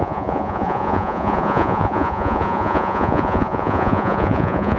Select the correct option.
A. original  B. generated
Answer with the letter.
B